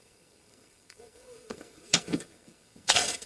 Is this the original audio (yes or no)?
no